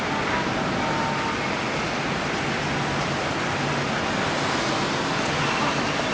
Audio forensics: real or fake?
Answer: real